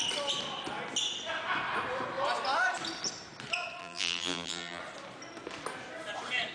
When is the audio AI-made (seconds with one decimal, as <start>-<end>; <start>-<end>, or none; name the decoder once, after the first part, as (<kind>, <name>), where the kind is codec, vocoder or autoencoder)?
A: 3.8-4.8 (vocoder, BigVGAN v2)